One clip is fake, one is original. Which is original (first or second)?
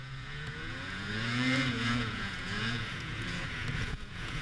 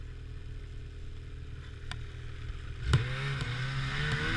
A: second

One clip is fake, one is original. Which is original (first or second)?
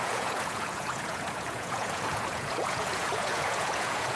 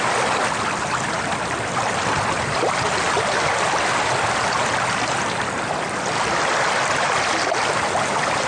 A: second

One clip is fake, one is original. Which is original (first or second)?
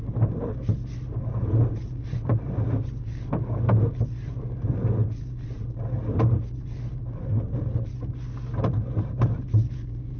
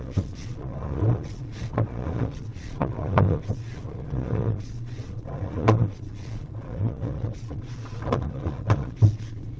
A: first